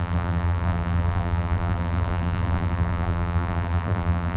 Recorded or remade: remade